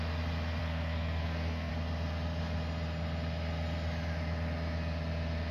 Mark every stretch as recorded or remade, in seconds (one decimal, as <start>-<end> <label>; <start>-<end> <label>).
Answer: 0.0-0.6 recorded; 0.6-1.7 remade; 1.7-5.5 recorded